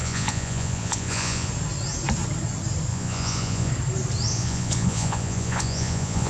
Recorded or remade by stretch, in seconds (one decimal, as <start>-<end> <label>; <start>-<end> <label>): 0.0-1.5 remade; 1.5-2.9 recorded; 2.9-3.7 remade; 3.7-4.3 recorded; 4.3-6.3 remade